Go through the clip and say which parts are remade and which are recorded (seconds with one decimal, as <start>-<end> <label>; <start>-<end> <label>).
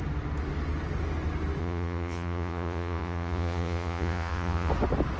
0.0-1.6 recorded; 1.6-4.7 remade; 4.7-5.2 recorded